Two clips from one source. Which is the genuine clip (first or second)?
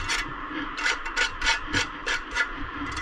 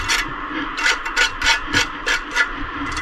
second